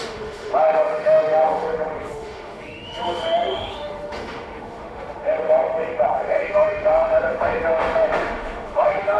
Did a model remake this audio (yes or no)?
yes